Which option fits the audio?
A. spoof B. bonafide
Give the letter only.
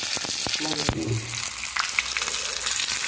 B